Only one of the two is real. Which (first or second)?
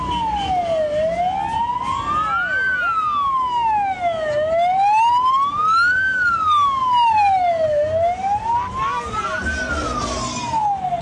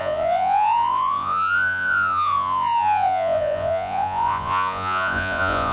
first